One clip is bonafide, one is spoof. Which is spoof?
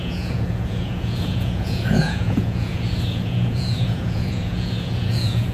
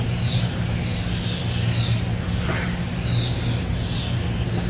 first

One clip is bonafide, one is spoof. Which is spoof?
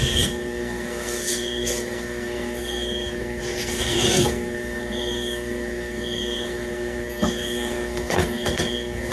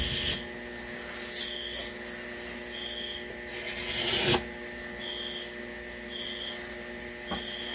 first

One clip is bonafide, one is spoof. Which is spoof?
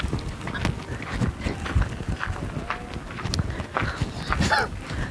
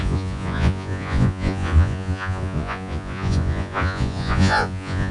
second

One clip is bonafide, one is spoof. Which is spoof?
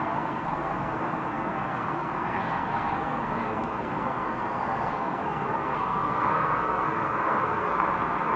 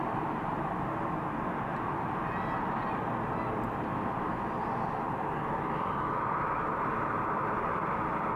first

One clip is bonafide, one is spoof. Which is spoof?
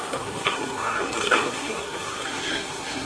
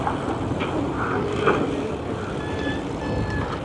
first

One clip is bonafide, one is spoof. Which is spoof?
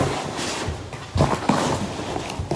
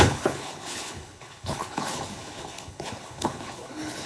second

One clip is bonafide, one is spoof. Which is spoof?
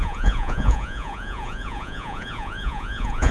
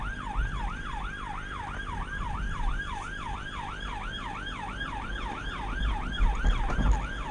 first